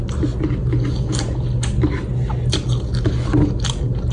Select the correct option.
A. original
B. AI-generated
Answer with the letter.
A